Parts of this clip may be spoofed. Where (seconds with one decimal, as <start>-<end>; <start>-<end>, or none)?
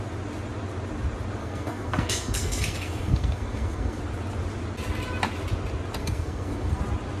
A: 1.4-4.0; 6.0-6.8